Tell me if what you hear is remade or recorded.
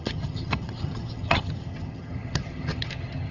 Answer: remade